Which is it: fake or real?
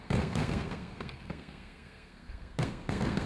fake